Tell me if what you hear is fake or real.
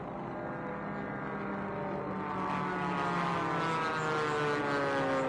real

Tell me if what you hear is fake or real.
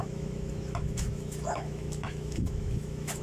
fake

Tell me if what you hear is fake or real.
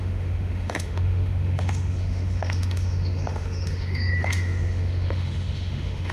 fake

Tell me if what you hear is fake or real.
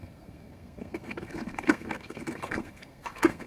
fake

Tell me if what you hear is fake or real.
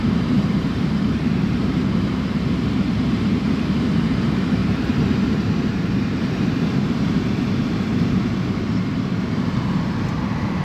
fake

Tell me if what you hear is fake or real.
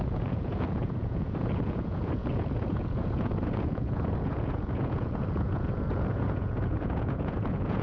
fake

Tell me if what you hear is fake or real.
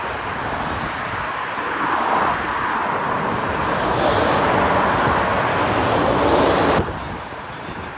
fake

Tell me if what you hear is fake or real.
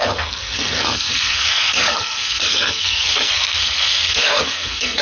fake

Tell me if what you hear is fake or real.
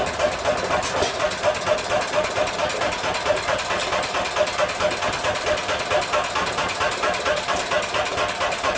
real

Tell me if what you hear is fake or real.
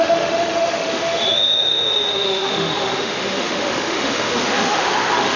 fake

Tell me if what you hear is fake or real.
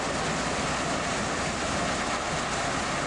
real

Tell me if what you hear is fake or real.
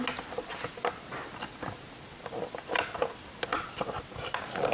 real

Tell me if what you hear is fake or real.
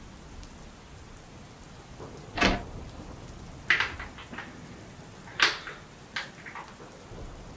real